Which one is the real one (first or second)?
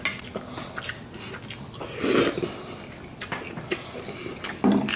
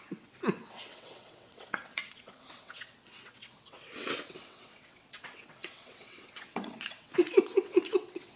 first